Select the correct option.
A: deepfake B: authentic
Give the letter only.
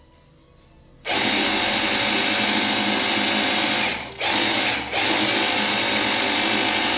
B